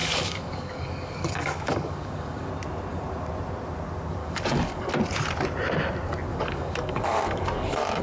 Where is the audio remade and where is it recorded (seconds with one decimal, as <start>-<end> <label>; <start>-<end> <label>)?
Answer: 0.0-2.5 remade; 2.5-4.2 recorded; 4.2-4.9 remade; 4.9-6.3 recorded; 6.3-8.0 remade